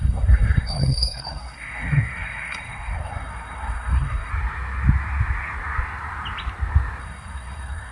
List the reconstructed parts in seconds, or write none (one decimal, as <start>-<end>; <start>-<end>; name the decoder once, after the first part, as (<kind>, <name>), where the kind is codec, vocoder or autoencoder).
0.0-4.3 (codec, SNAC); 7.0-7.9